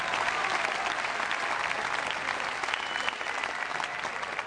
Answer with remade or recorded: recorded